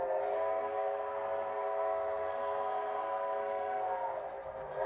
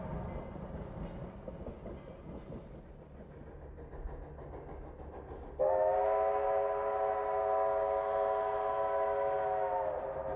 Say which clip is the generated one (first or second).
first